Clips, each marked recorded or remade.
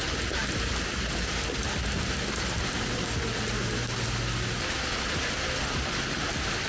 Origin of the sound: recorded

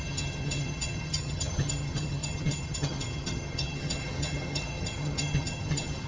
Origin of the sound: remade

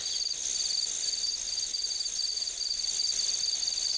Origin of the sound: recorded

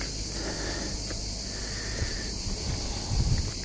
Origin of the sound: recorded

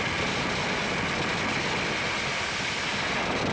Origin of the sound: recorded